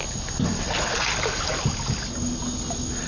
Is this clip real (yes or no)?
yes